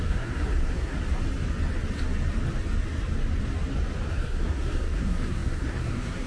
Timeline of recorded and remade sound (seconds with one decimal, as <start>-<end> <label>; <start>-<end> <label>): 0.0-1.0 remade; 1.0-4.1 recorded; 4.1-6.3 remade